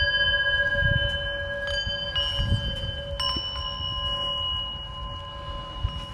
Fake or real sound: real